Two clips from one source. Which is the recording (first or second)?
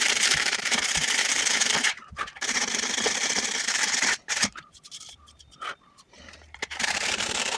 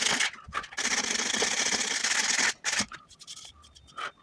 second